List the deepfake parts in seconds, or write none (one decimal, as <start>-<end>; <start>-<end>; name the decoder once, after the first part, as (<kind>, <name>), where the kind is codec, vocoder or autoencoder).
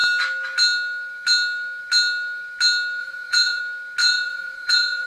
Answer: 3.0-3.6 (vocoder, Vocos); 4.0-5.1